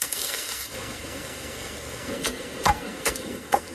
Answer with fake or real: fake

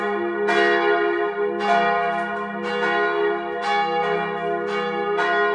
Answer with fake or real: real